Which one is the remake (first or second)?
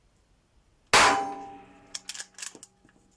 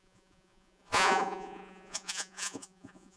second